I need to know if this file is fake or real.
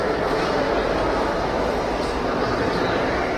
real